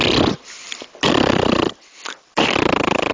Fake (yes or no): no